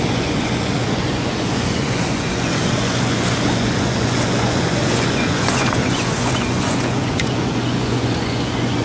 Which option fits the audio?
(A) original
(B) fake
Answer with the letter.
B